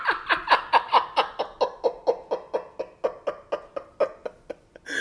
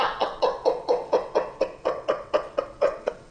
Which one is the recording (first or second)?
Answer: first